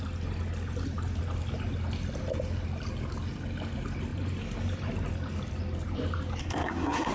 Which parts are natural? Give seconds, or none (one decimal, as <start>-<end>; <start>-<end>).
0.0-6.4